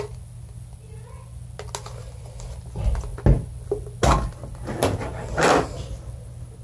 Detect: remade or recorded recorded